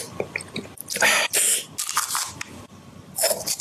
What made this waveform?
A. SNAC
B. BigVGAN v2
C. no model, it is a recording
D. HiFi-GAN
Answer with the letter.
B